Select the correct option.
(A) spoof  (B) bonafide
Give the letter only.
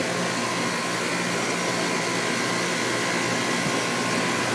B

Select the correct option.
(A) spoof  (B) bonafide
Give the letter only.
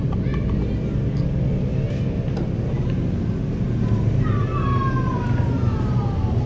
B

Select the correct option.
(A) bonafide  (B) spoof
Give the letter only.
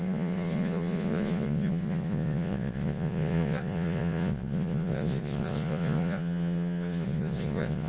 B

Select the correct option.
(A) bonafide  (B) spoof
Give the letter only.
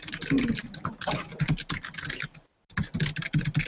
A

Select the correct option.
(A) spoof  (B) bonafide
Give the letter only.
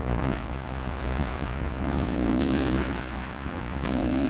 A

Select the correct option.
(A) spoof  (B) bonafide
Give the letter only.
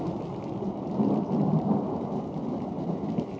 B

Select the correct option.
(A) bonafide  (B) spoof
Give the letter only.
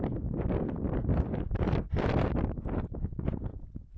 A